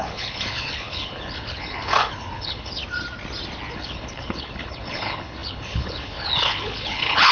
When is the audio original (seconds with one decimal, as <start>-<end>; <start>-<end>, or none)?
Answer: 2.8-3.7